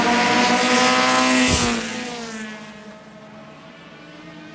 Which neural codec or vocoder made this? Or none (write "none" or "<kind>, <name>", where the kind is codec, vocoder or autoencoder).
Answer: none